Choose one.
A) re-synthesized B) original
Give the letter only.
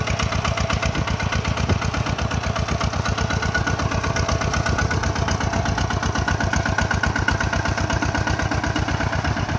B